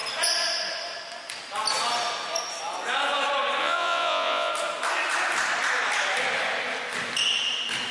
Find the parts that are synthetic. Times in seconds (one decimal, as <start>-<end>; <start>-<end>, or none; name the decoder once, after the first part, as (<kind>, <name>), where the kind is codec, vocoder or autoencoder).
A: 3.6-4.5 (vocoder, Vocos)